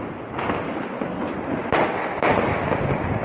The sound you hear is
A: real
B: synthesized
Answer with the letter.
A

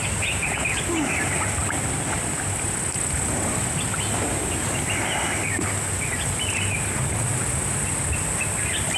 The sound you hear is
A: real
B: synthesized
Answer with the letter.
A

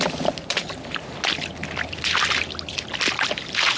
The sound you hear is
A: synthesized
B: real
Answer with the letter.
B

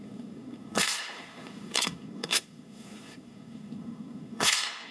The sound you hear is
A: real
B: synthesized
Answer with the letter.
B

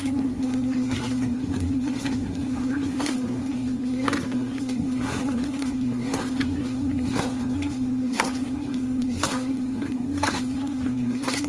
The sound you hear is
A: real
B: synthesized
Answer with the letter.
B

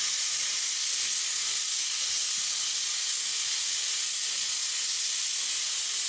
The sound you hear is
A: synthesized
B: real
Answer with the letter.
B